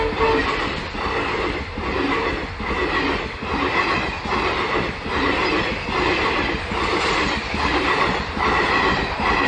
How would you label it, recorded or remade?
recorded